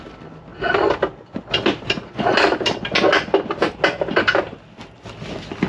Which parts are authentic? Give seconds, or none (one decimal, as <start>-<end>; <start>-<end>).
0.0-5.7